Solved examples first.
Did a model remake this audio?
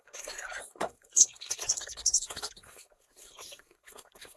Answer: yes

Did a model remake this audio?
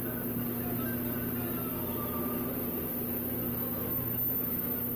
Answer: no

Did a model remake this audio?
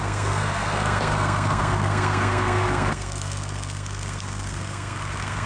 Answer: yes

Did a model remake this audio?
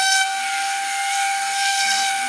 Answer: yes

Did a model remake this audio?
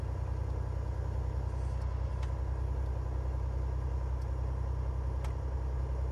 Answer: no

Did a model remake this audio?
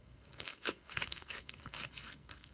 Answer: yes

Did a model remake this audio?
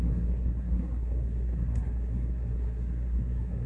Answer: yes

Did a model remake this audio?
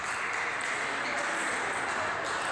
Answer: no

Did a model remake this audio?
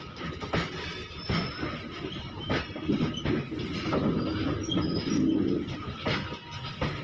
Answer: no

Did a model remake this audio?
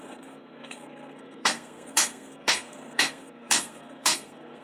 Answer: yes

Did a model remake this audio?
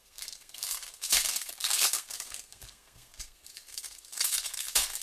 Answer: yes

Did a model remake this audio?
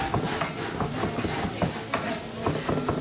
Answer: no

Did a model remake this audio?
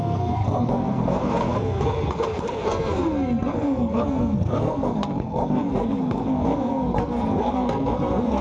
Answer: yes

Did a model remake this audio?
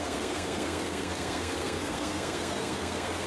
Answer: yes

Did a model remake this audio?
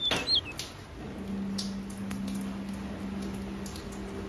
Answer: no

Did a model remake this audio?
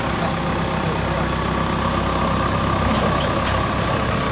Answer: no